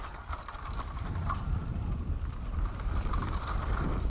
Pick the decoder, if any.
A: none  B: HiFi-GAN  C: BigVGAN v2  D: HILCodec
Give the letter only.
C